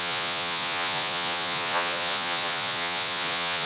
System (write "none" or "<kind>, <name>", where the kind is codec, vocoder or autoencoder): vocoder, Vocos